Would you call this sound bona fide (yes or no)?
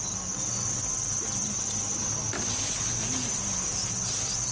yes